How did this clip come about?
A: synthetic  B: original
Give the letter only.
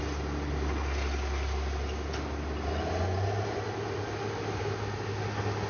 B